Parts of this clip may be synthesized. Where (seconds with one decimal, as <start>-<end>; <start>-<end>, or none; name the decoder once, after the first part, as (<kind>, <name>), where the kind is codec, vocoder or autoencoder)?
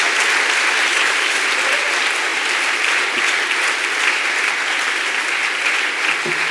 0.9-1.4 (autoencoder, DAC-VAE)